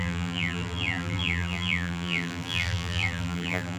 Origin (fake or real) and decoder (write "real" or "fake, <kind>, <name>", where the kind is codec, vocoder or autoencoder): fake, vocoder, BigVGAN v2